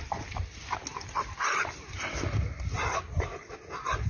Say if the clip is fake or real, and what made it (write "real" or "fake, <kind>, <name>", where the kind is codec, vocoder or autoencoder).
real